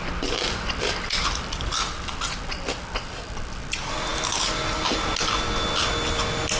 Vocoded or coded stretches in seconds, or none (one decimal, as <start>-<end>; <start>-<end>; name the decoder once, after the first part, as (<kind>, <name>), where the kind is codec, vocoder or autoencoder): none

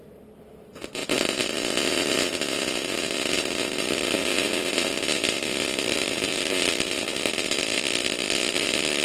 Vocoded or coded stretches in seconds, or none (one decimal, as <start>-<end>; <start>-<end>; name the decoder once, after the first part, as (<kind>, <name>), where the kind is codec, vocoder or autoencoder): none

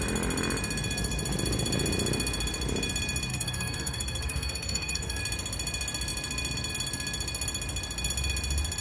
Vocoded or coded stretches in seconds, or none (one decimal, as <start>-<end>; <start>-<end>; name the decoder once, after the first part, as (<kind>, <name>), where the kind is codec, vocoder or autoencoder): 3.3-5.2 (codec, SNAC)

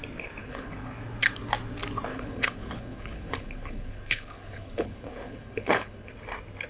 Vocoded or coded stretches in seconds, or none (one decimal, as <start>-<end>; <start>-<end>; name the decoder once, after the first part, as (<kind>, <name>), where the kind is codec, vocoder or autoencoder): 0.4-0.9 (codec, HILCodec); 2.1-6.1

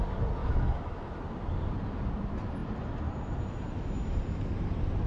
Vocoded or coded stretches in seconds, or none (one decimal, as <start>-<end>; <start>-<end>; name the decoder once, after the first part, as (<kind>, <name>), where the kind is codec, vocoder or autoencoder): 0.4-1.1 (autoencoder, DAC-VAE)

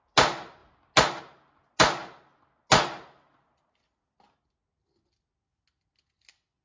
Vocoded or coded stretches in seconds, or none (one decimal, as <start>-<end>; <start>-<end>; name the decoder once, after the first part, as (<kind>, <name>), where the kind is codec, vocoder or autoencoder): none